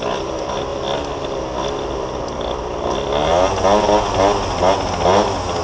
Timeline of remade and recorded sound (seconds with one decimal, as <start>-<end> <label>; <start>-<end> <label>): 0.0-5.6 recorded